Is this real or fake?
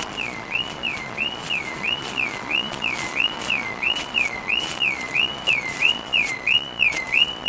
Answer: fake